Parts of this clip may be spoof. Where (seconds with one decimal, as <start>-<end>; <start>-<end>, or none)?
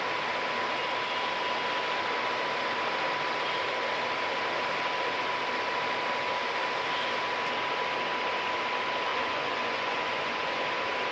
9.1-10.6